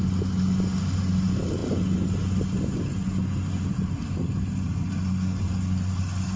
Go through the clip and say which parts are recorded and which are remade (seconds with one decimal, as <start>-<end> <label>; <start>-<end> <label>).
0.0-6.4 recorded